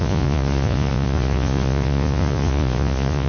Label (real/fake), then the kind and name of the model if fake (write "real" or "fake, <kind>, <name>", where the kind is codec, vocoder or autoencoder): fake, vocoder, Vocos